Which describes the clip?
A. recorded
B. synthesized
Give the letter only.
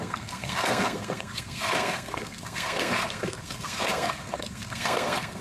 B